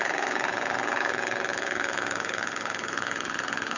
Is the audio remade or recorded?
remade